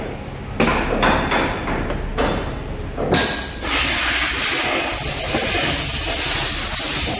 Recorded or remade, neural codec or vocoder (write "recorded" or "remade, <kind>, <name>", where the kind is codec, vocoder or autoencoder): recorded